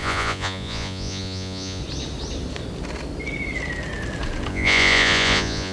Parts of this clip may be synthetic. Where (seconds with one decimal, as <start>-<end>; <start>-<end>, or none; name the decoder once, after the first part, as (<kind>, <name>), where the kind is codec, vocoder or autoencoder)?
0.0-1.8 (vocoder, Vocos); 4.5-5.7